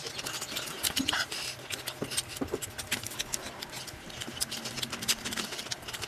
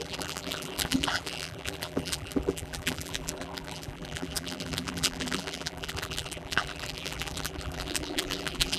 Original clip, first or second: first